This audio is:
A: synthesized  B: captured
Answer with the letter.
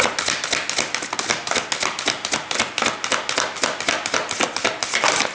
B